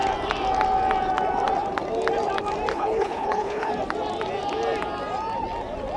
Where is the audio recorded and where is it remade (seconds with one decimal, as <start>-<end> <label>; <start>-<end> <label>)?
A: 0.0-2.7 recorded; 2.7-3.7 remade; 3.7-6.0 recorded